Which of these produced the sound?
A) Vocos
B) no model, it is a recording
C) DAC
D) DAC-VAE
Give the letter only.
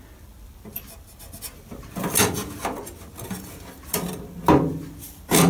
B